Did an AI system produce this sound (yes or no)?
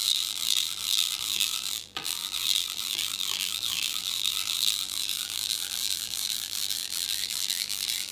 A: yes